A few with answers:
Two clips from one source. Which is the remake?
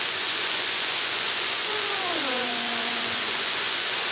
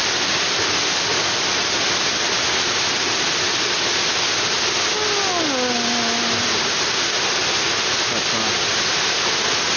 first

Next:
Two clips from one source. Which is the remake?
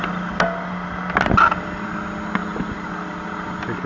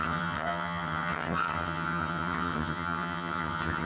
second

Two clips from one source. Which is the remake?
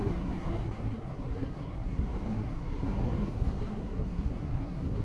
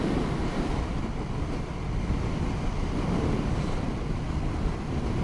first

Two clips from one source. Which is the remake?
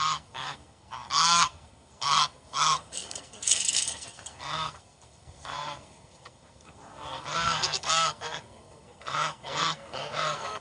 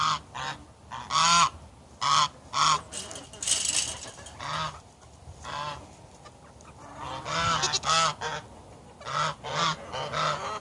first